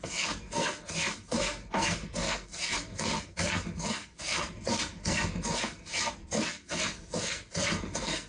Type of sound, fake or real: fake